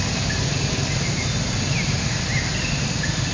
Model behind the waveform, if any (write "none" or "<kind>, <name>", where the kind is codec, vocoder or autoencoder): none